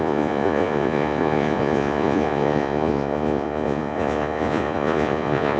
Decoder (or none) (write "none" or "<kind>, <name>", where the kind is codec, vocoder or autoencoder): vocoder, Vocos